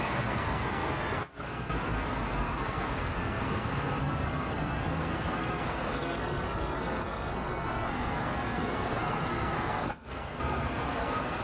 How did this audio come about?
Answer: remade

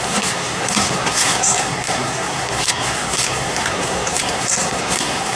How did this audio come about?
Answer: remade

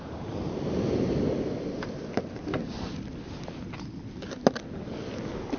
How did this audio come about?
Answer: recorded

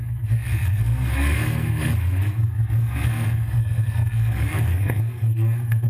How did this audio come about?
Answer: remade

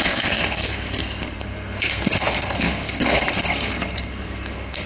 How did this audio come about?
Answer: remade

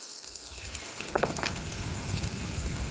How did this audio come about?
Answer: remade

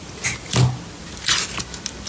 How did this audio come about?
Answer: recorded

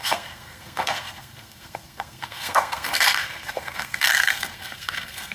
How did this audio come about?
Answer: remade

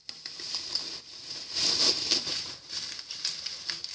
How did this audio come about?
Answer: recorded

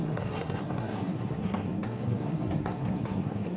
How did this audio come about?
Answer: remade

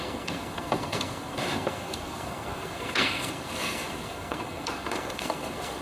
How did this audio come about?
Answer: remade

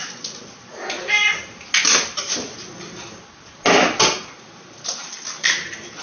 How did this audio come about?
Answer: recorded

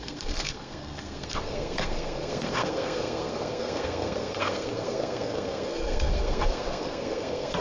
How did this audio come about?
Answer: remade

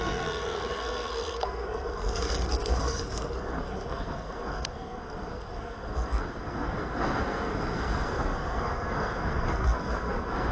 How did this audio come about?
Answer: remade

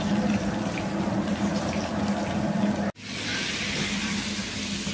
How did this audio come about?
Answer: recorded